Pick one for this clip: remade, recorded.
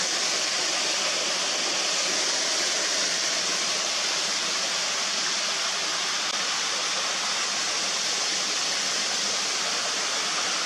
recorded